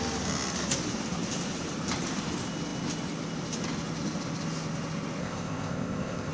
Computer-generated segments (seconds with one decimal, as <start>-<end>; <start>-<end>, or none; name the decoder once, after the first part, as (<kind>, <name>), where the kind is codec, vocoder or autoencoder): 5.2-6.3 (codec, ZipCodec)

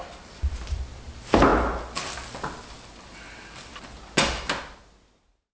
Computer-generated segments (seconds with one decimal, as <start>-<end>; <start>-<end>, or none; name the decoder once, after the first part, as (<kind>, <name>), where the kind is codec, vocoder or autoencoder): none

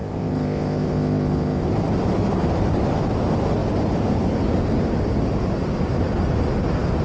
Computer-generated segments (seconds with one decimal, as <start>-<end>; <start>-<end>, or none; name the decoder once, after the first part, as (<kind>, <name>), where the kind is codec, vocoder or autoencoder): 0.0-1.7 (codec, ZipCodec)

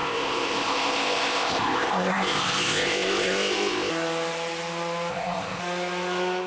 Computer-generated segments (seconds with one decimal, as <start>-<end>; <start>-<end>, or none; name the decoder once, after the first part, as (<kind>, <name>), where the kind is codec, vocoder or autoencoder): 0.0-3.9 (codec, ZipCodec); 5.1-5.6

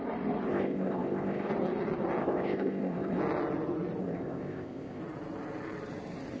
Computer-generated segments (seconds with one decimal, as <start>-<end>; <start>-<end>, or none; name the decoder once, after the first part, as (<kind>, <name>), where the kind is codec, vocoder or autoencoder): 0.5-1.5 (codec, ZipCodec); 2.2-3.2; 4.0-5.0

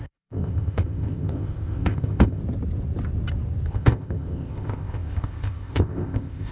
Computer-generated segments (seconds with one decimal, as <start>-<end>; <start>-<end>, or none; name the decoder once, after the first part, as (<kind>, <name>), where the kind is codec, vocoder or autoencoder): 0.0-2.4 (codec, ZipCodec); 3.7-6.5